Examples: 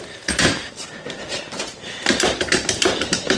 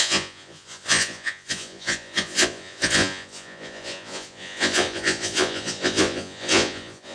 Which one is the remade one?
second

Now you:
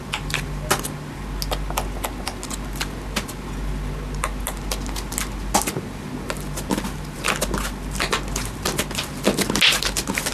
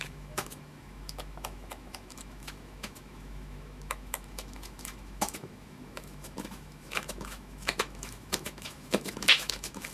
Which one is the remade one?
second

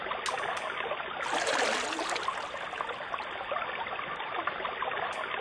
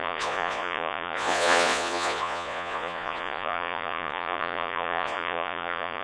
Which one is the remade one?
second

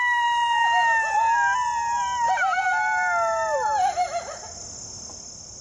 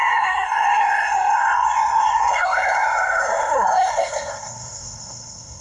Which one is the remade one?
second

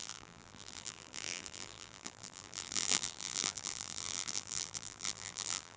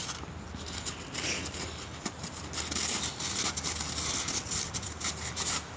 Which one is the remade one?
first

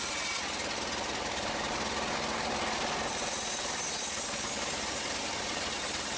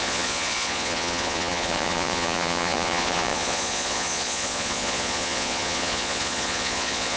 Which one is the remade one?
second